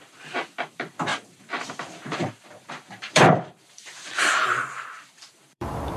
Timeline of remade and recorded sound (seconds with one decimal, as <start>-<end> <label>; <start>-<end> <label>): 0.0-6.0 remade